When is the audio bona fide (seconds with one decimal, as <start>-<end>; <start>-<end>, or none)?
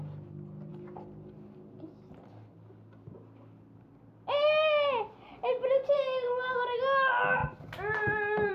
0.0-8.5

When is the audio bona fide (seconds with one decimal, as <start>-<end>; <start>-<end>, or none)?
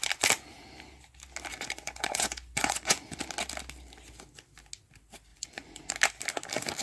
0.0-1.5; 3.2-5.3; 5.9-6.8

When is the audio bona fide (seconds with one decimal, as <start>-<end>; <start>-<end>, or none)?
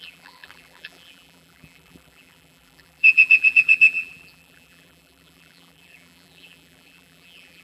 none